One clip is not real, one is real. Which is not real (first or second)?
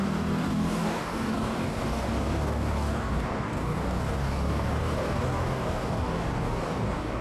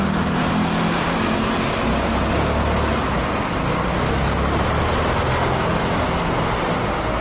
first